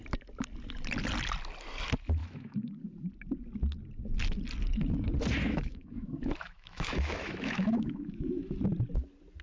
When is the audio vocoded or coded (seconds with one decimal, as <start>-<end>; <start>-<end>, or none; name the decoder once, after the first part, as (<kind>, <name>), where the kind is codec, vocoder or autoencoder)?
2.2-2.8 (autoencoder, DAC-VAE); 5.4-8.6